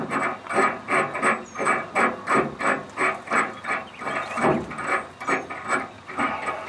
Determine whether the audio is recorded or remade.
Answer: recorded